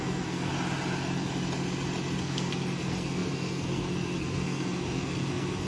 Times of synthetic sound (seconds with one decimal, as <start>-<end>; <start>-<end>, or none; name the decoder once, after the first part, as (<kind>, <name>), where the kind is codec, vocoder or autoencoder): 0.0-0.5 (codec, SNAC); 2.2-5.7